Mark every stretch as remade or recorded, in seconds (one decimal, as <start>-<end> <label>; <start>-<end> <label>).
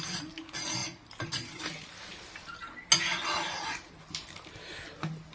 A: 0.0-5.3 recorded